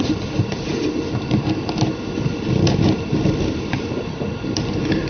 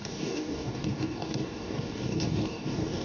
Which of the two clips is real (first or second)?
first